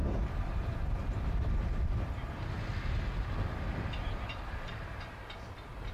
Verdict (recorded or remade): recorded